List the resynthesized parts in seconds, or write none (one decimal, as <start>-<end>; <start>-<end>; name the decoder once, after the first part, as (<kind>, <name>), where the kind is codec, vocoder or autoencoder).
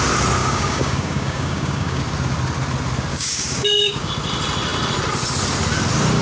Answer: 0.4-2.0 (codec, DAC); 3.1-4.1